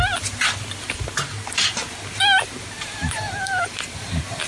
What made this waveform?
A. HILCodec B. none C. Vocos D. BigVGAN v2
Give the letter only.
B